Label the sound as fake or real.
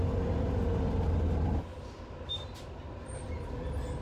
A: real